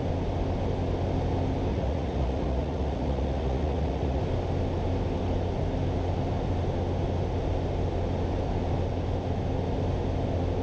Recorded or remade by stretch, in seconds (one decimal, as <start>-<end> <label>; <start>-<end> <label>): 0.0-1.7 recorded; 1.7-4.2 remade; 4.2-10.6 recorded